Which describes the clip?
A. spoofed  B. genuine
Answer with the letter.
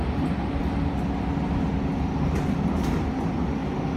B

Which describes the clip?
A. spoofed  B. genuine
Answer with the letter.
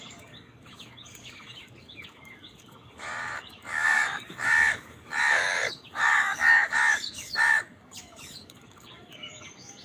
A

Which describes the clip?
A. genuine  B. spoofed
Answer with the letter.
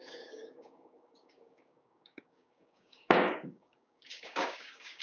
B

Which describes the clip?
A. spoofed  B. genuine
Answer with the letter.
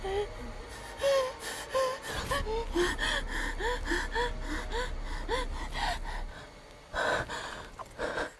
B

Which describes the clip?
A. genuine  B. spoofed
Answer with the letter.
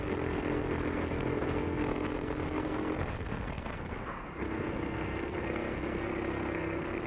B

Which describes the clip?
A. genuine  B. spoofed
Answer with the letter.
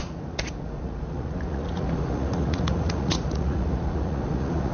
B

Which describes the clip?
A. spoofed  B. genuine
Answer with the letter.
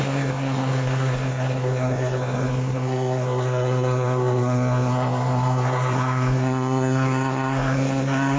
A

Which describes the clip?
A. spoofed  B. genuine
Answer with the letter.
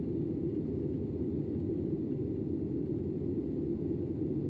B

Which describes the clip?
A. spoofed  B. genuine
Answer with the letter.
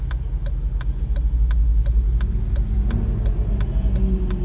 B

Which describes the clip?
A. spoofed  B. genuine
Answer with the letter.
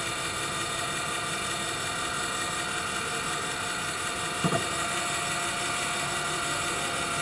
B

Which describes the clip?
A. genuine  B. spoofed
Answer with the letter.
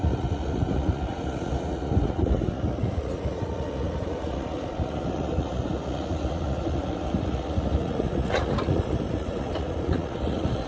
B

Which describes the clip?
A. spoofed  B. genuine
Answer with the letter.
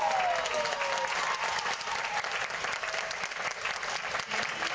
B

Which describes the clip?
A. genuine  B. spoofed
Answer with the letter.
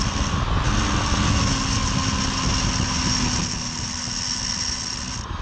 A